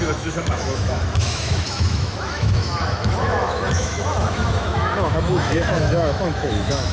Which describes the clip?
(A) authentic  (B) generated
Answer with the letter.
B